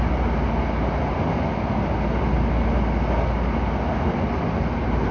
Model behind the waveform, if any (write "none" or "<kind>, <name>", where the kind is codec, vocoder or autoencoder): none